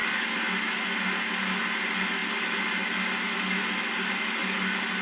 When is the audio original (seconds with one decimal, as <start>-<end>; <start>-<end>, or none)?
0.0-5.0